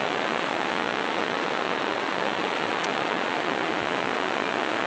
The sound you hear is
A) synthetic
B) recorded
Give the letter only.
A